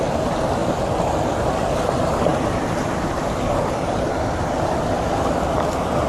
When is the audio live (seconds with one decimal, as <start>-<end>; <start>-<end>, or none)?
0.0-6.1